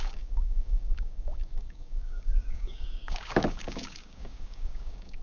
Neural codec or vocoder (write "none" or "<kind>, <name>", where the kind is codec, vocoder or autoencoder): codec, DAC